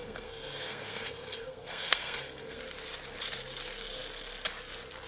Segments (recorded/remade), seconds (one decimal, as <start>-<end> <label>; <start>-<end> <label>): 0.0-2.6 remade; 2.6-5.1 recorded